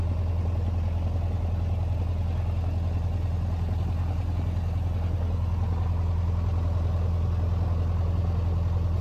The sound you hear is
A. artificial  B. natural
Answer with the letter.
B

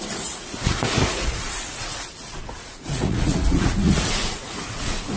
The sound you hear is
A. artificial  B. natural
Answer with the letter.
A